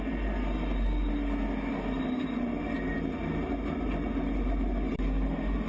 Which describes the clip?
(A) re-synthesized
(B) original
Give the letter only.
B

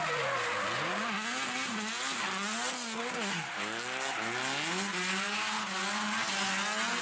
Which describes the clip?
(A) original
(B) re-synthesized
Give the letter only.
A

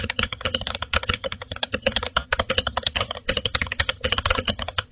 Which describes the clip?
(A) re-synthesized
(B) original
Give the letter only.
A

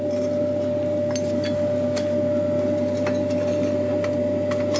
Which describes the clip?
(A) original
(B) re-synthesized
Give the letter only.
A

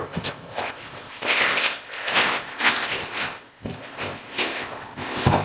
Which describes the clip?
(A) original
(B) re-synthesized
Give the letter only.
B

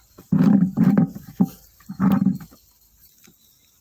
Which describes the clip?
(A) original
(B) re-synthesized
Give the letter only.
A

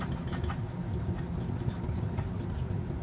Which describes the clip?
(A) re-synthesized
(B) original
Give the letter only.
B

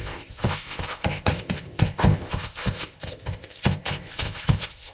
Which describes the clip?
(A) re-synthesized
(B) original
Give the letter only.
A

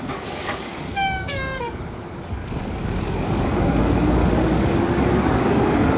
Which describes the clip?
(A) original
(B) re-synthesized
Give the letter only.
B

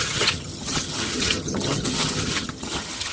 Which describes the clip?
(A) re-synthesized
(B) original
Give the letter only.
A